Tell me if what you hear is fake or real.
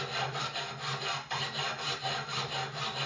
real